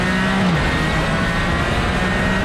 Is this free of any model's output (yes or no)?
yes